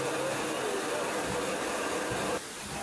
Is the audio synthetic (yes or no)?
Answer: no